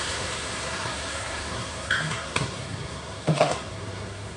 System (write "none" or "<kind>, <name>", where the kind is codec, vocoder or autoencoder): codec, SNAC